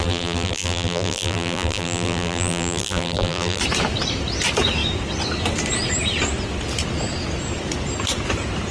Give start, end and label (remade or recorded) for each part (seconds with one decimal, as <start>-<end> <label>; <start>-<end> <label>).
0.0-3.6 remade; 3.6-8.7 recorded